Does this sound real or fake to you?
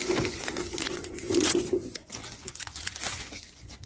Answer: fake